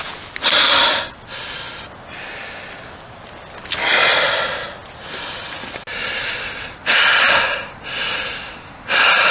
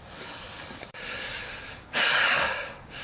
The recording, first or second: first